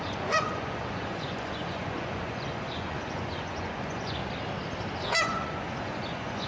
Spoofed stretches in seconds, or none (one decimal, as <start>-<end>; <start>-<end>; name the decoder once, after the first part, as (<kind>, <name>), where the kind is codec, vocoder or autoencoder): 0.0-4.2 (vocoder, Vocos); 5.0-6.5